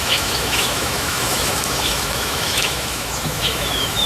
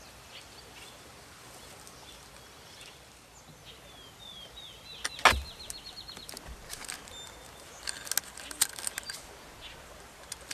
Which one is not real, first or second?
first